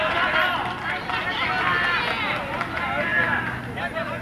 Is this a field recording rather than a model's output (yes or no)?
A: yes